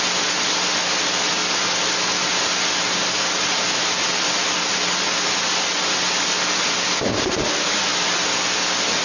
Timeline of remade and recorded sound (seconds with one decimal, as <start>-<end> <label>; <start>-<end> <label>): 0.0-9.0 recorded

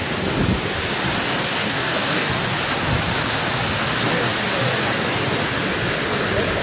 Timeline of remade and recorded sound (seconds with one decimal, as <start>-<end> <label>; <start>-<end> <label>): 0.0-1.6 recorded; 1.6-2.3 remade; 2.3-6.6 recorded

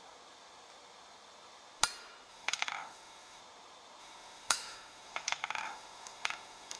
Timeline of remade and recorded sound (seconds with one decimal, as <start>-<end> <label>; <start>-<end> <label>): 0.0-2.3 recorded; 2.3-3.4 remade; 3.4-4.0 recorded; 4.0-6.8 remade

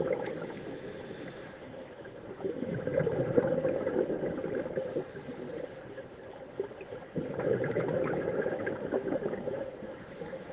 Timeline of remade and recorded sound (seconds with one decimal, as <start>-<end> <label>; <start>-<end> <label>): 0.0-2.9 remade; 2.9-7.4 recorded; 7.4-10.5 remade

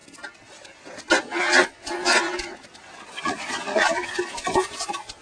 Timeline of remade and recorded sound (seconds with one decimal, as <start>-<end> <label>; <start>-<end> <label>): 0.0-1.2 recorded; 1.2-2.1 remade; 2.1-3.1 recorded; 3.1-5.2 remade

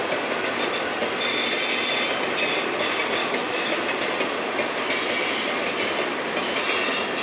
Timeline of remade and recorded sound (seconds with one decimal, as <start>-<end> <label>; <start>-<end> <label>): 0.0-3.2 recorded; 3.2-3.8 remade; 3.8-7.2 recorded

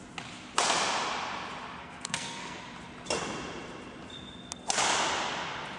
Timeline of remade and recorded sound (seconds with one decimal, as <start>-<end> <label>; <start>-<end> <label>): 0.0-1.8 recorded; 1.8-2.6 remade; 2.6-5.8 recorded